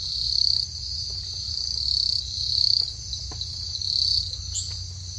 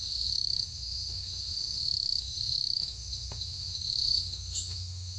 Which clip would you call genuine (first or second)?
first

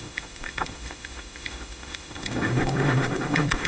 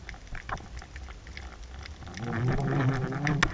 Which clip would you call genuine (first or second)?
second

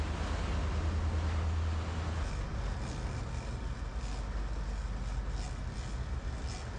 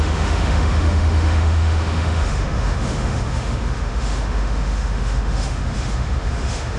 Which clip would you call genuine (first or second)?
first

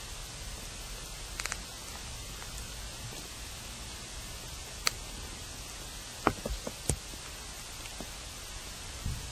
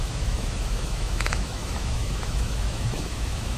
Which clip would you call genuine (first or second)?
first